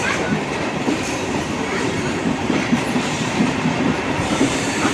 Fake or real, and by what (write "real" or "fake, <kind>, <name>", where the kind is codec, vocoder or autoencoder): fake, vocoder, BigVGAN v2